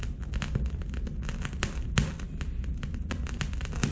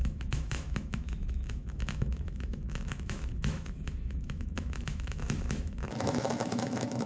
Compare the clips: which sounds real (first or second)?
first